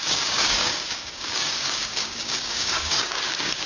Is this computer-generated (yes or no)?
yes